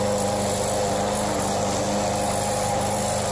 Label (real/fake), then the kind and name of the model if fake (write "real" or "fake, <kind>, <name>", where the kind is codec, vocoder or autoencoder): real